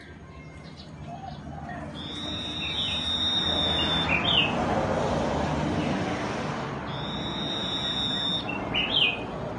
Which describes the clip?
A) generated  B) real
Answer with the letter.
B